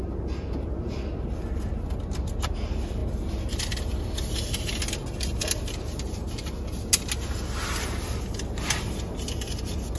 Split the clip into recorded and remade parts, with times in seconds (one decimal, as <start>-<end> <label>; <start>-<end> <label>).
0.0-10.0 recorded